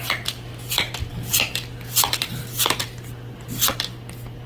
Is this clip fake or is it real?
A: real